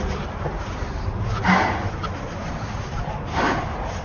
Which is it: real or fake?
real